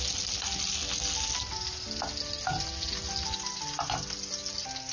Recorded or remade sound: recorded